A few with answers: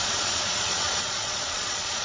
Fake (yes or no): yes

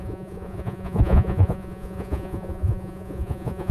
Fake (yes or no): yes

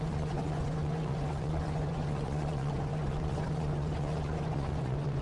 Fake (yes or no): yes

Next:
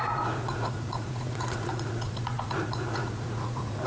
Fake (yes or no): yes